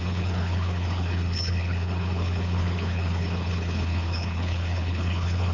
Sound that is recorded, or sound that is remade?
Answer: remade